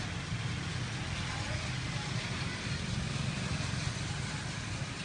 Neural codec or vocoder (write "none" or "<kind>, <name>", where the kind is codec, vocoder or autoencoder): none